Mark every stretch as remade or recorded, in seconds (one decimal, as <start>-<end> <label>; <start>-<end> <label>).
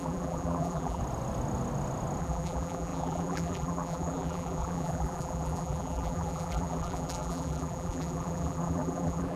0.0-1.0 remade; 1.0-2.2 recorded; 2.2-9.4 remade